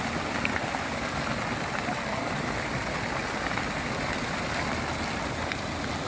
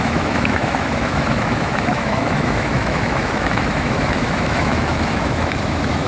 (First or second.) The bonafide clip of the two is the first